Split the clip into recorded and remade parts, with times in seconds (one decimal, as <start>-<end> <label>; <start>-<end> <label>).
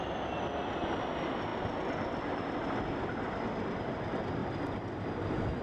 0.0-5.6 recorded